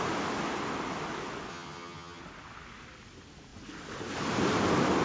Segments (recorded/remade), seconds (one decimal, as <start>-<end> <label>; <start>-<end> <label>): 0.0-1.5 recorded; 1.5-2.2 remade; 2.2-5.0 recorded